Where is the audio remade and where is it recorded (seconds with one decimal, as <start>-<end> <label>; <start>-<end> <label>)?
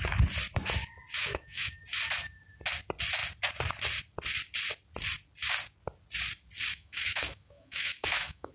0.0-1.2 recorded; 1.2-1.8 remade; 1.8-6.7 recorded; 6.7-8.5 remade